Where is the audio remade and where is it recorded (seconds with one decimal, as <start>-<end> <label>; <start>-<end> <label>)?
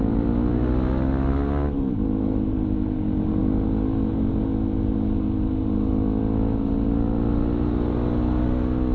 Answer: 0.0-8.9 recorded